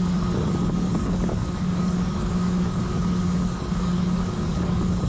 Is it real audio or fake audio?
fake